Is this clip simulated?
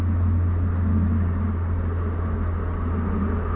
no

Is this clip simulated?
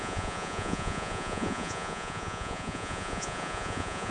yes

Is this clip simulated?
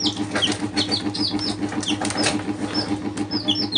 no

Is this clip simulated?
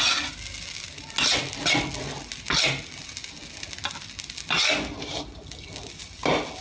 no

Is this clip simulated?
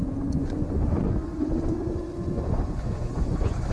yes